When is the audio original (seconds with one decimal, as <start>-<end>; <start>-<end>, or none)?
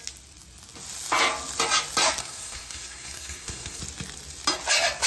0.0-2.2; 3.8-5.1